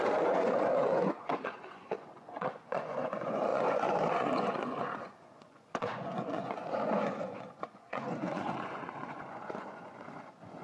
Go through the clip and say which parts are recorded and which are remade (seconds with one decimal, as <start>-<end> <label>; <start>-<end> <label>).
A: 0.0-10.6 remade